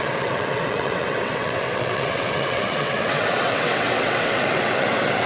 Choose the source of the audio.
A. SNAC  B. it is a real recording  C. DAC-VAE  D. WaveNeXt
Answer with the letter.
D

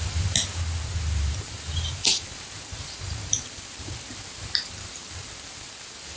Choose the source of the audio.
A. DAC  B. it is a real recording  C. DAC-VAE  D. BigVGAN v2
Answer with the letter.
D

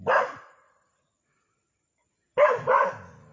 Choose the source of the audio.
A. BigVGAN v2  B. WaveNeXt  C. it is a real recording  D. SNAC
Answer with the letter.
C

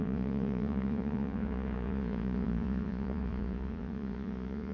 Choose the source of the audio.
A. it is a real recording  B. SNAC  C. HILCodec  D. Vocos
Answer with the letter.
D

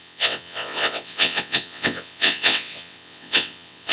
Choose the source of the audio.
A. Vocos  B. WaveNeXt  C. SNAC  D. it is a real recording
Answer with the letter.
B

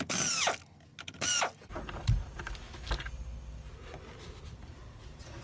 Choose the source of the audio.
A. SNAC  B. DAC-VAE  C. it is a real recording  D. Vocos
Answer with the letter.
C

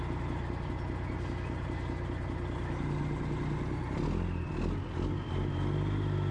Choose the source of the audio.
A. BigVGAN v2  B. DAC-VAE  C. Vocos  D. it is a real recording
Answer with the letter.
D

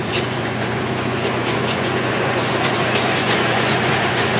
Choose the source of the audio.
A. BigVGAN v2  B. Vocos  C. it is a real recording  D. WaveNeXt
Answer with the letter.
B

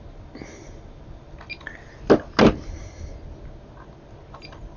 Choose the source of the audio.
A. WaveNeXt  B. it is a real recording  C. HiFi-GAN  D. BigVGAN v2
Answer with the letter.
B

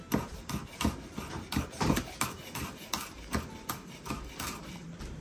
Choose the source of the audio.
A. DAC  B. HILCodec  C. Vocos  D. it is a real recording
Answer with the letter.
D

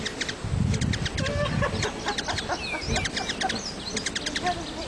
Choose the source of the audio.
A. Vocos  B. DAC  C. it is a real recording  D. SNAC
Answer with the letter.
C